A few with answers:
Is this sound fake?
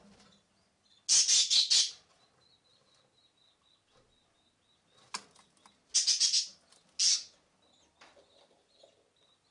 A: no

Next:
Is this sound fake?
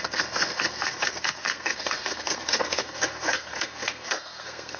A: yes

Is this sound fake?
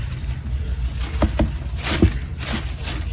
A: no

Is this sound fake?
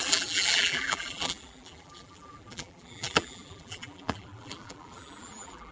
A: yes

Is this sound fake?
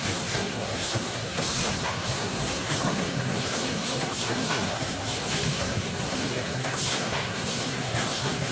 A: yes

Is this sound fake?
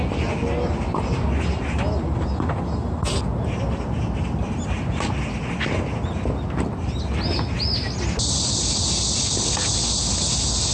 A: no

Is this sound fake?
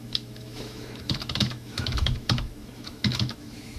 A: yes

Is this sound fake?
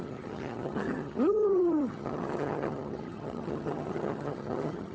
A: yes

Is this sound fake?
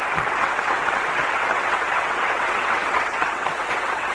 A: yes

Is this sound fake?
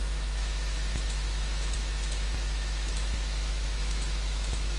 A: yes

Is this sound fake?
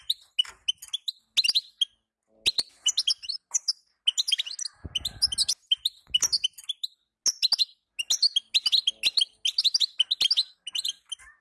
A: no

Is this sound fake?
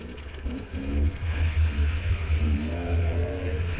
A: yes